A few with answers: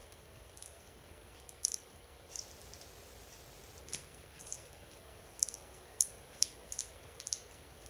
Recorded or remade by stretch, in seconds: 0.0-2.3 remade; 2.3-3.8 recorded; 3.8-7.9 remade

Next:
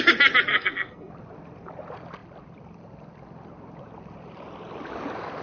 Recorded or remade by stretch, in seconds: 0.0-0.5 recorded; 0.5-1.1 remade; 1.1-5.4 recorded